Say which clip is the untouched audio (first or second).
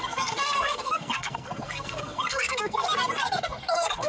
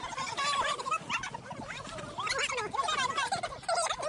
second